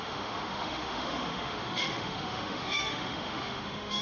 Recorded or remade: remade